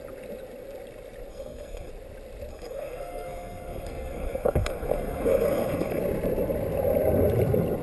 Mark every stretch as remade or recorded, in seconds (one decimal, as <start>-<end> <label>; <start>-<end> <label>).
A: 0.0-1.3 recorded; 1.3-1.9 remade; 1.9-2.5 recorded; 2.5-6.0 remade; 6.0-7.8 recorded